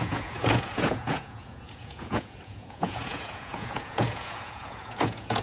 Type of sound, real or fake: fake